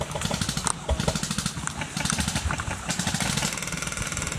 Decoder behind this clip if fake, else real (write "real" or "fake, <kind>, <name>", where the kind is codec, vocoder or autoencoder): real